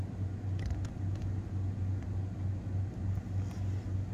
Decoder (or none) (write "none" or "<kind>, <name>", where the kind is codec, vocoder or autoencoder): none